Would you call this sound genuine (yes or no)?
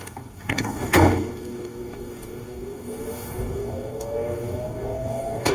no